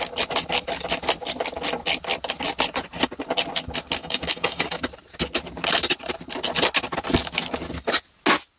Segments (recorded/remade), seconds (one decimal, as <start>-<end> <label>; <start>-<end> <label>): 0.0-4.0 recorded; 4.0-4.8 remade; 4.8-8.6 recorded